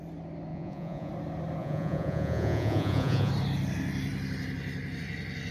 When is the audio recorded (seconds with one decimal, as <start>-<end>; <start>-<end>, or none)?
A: 0.0-0.5; 1.1-1.6; 3.3-5.5

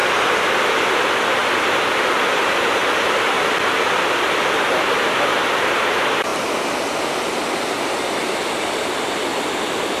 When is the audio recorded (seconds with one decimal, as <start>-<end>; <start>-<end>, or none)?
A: 0.0-1.4; 2.1-10.0

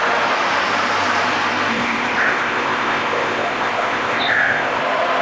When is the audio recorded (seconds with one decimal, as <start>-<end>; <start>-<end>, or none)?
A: 0.0-1.7; 4.8-5.2

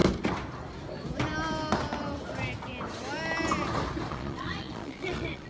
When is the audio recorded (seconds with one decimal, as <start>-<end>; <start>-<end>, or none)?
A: 0.0-4.1